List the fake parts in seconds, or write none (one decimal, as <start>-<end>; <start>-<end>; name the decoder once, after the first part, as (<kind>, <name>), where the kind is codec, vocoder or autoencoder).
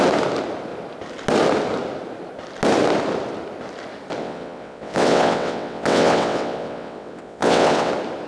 4.2-7.9 (vocoder, WaveNeXt)